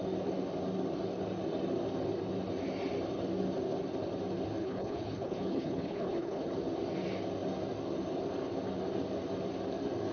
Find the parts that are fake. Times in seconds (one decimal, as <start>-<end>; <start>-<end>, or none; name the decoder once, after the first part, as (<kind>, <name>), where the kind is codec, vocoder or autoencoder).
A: 4.6-6.5 (codec, HILCodec)